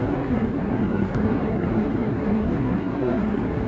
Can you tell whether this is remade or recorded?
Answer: remade